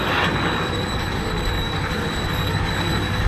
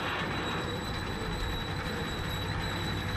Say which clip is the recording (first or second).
second